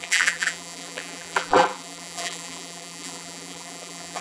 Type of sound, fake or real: fake